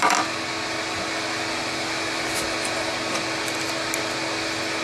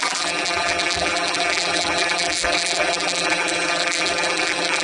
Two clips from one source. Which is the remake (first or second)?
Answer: second